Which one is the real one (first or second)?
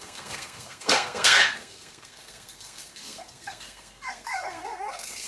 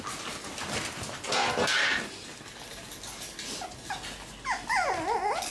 second